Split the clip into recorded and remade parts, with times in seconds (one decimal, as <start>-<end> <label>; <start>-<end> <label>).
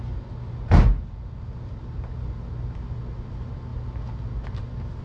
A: 0.0-5.0 recorded